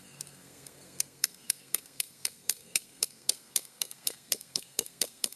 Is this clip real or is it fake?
fake